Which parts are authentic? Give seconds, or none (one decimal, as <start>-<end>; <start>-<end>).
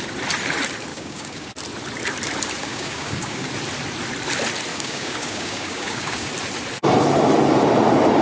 0.0-0.9; 1.5-2.6; 3.5-4.7; 6.3-8.2